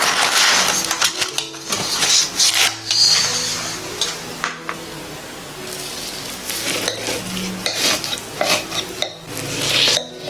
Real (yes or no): yes